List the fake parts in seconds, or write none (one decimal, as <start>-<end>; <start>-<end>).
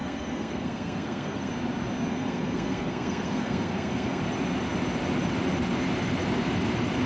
0.0-1.5; 2.1-4.2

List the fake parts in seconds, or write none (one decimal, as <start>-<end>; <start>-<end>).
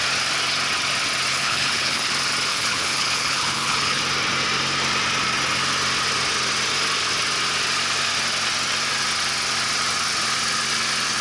1.3-2.1; 2.5-4.0